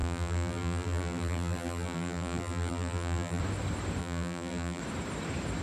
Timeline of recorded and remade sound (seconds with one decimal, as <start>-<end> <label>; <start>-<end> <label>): 0.0-3.4 remade; 3.4-4.0 recorded; 4.0-4.8 remade; 4.8-5.6 recorded